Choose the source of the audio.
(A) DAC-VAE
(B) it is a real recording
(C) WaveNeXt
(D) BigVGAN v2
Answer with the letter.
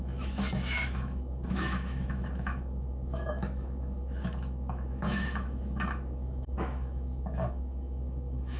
A